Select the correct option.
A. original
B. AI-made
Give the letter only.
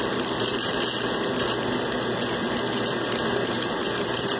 A